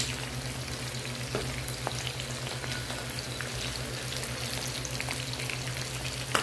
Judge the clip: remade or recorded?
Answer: recorded